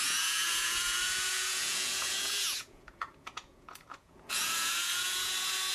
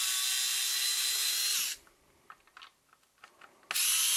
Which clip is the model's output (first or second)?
first